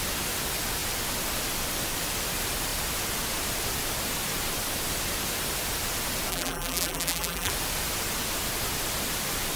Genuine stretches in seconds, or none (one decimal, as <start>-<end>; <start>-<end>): 0.0-6.3; 7.5-9.6

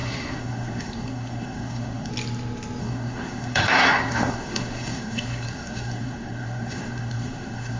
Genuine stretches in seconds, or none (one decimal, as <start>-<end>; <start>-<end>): 2.1-2.8

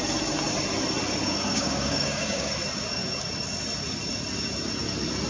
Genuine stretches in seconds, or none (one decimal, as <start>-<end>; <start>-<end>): 0.0-1.5; 2.5-5.3

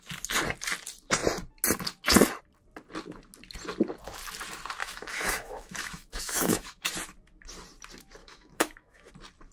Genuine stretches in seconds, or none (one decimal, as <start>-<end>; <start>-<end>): 0.0-4.8; 6.9-8.2; 9.1-9.5

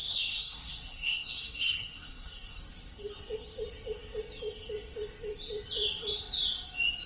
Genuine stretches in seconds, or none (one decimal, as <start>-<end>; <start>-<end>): 2.6-7.1

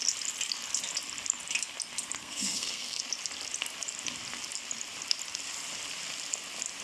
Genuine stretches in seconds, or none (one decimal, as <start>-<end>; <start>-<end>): 0.0-2.2; 3.0-6.8